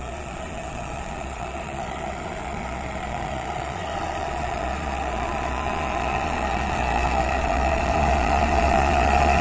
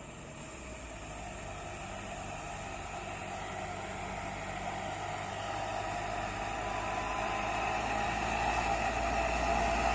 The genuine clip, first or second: second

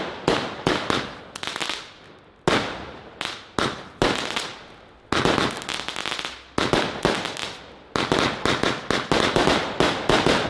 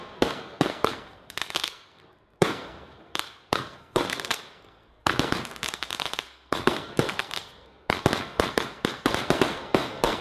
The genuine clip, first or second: first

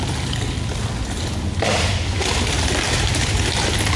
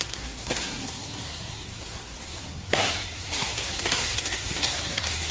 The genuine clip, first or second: first